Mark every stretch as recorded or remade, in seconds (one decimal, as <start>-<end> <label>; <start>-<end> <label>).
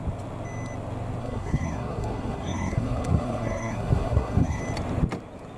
0.0-1.2 recorded; 1.2-4.6 remade; 4.6-5.6 recorded